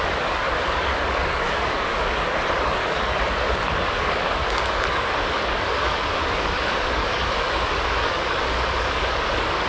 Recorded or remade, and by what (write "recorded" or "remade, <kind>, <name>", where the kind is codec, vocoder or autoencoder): remade, codec, DAC